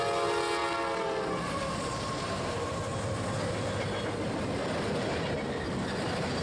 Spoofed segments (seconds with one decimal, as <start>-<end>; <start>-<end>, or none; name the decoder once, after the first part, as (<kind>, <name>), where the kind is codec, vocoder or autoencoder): none